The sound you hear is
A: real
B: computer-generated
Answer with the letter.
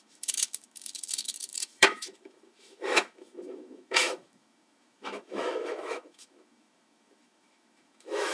B